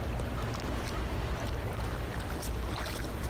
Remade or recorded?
recorded